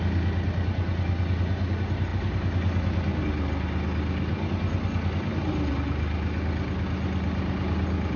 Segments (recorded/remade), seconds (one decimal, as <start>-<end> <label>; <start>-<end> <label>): 0.0-8.2 recorded